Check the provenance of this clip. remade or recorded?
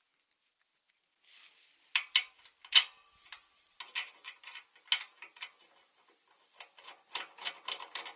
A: recorded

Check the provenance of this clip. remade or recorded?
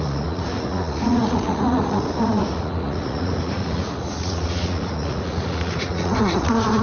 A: remade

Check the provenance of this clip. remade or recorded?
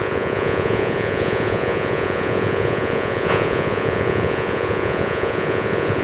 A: remade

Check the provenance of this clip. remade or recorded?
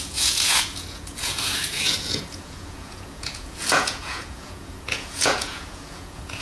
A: remade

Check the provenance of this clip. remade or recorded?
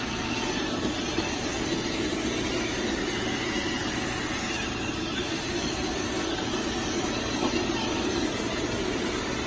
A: recorded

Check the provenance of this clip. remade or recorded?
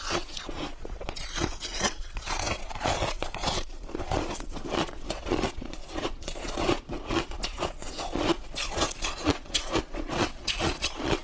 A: remade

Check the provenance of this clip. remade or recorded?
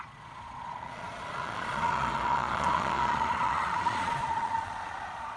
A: remade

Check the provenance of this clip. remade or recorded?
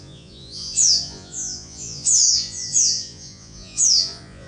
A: remade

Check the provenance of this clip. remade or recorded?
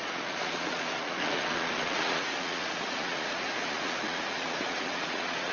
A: remade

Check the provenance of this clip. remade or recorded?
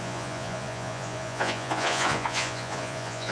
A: remade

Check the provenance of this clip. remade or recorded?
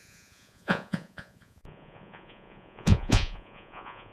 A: remade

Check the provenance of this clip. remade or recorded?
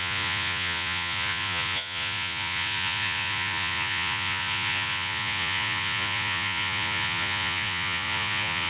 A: remade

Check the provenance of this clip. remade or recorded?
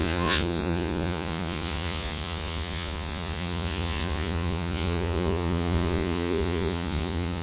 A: remade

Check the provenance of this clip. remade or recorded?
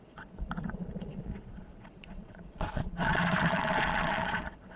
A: remade